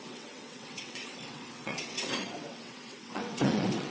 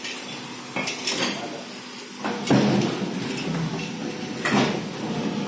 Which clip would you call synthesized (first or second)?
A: first